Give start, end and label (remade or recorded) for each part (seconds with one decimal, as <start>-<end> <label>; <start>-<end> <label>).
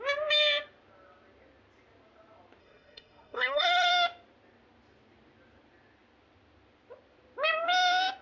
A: 0.0-2.6 recorded; 2.6-3.9 remade; 3.9-8.2 recorded